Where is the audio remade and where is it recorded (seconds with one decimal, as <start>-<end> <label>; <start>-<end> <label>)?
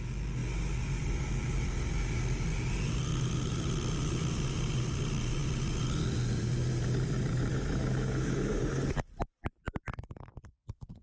0.0-7.5 recorded; 7.5-8.6 remade; 8.6-11.0 recorded